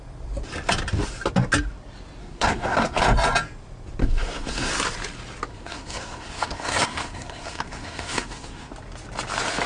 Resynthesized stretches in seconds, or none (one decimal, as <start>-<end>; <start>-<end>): 2.2-3.0; 4.0-4.7; 5.5-8.7